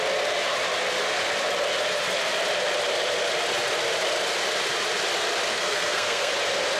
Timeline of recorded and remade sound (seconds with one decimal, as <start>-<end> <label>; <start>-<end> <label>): 0.0-5.5 recorded; 5.5-6.3 remade; 6.3-6.8 recorded